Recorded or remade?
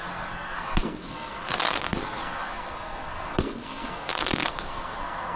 remade